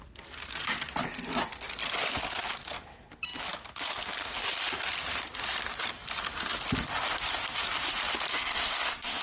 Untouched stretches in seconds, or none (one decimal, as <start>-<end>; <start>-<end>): 0.0-8.3